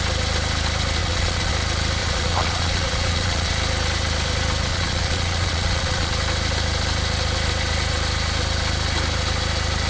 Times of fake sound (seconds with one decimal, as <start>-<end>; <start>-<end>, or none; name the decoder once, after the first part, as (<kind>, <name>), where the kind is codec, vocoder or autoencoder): 1.0-1.5 (vocoder, Vocos); 2.0-3.5; 4.7-6.1